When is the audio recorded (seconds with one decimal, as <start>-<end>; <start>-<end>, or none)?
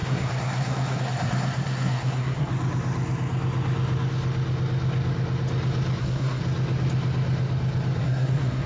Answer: 2.5-6.0; 6.4-8.0